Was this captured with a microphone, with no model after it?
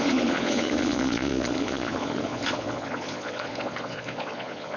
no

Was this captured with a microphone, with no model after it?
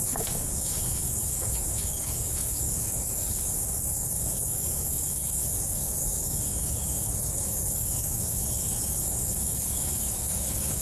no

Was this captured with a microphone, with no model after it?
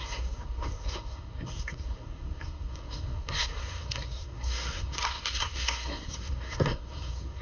no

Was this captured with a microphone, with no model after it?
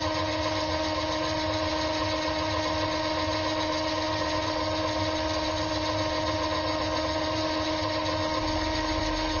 yes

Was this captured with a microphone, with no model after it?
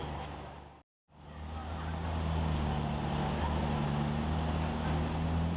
yes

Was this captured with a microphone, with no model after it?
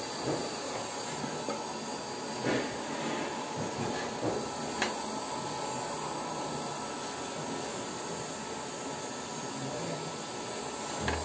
yes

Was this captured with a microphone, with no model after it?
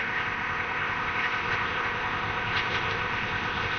no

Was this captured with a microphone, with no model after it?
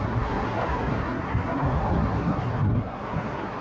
no